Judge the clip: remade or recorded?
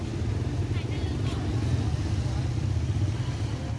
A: recorded